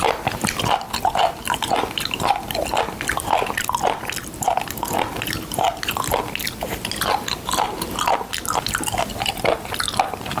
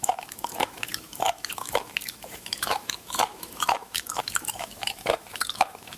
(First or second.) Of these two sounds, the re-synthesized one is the second